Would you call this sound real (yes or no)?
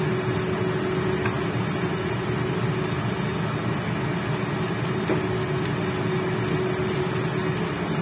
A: yes